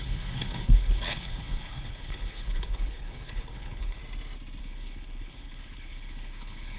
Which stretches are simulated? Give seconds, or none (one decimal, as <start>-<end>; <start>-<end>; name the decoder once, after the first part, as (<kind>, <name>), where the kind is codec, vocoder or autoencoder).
0.0-4.0 (codec, HILCodec); 4.6-6.8